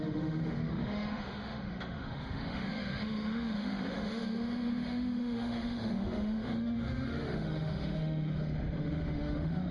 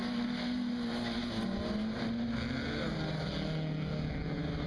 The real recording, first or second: second